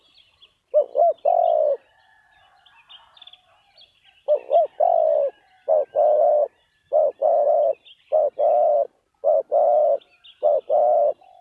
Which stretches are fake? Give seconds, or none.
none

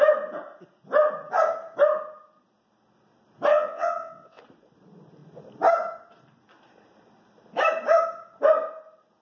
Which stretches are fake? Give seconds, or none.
3.5-4.4 (vocoder, WaveNeXt)

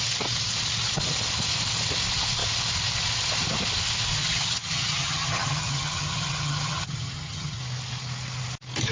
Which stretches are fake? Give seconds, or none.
4.2-7.6 (vocoder, HiFi-GAN)

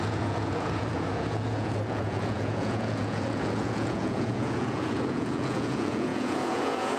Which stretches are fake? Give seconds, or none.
0.0-7.0 (vocoder, Vocos)

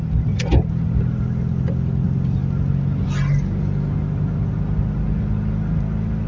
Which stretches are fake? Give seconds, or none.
none

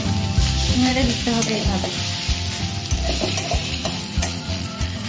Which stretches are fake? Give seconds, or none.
3.6-5.1 (vocoder, Vocos)

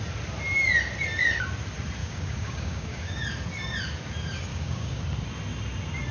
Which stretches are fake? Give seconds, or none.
2.0-3.2 (codec, DAC); 4.5-5.0